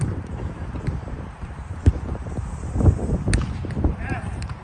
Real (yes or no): no